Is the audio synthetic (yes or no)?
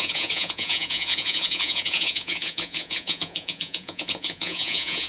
yes